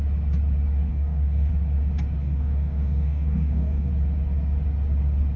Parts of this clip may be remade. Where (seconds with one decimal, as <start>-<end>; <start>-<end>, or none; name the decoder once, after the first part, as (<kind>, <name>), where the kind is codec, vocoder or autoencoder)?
0.9-1.5 (codec, DAC); 2.2-3.9